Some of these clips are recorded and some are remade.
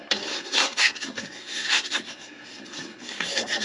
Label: remade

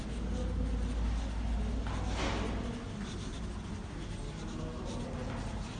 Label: recorded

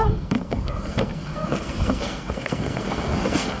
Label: remade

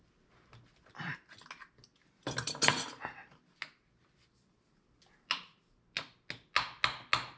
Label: recorded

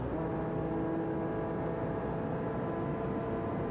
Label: recorded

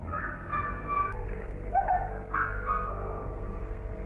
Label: remade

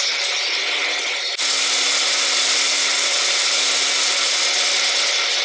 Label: recorded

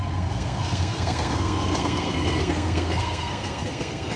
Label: remade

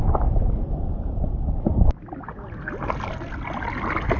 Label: recorded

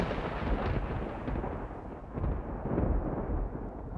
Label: recorded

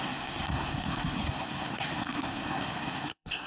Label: remade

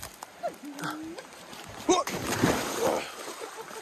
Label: recorded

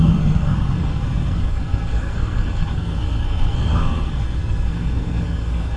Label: remade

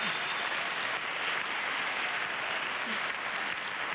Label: recorded